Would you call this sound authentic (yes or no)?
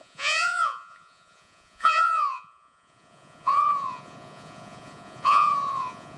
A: no